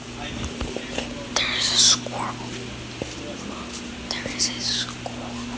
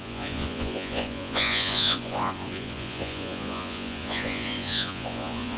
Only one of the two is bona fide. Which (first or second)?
first